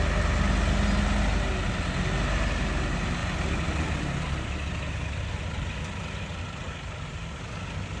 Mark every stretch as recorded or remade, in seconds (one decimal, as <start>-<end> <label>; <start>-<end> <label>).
0.0-8.0 recorded

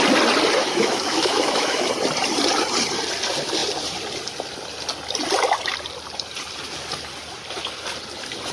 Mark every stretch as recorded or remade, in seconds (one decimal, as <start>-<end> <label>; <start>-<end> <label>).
0.0-0.6 recorded; 0.6-1.9 remade; 1.9-8.5 recorded